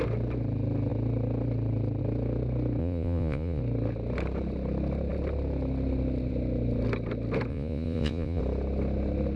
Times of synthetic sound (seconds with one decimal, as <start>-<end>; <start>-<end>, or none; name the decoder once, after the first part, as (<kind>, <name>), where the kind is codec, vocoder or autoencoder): 2.8-3.6 (vocoder, Vocos); 7.5-8.4